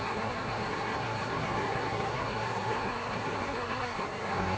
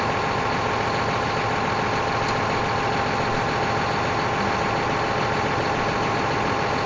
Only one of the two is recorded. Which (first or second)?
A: second